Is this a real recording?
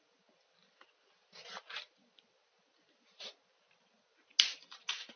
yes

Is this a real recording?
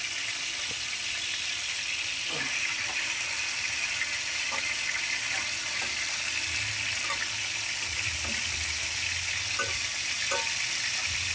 yes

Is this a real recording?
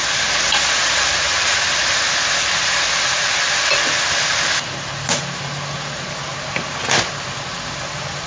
yes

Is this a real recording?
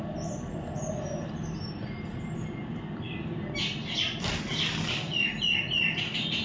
yes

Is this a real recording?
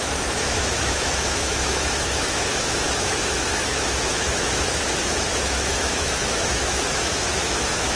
no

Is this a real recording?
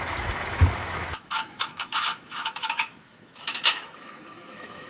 no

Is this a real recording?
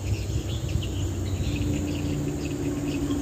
yes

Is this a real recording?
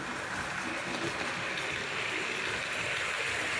yes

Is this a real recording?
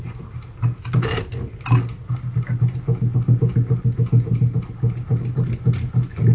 yes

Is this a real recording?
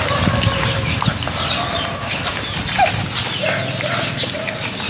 yes